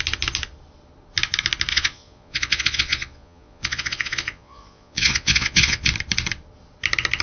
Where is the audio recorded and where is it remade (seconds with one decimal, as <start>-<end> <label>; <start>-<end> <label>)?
0.0-1.7 recorded; 1.7-5.9 remade; 5.9-7.2 recorded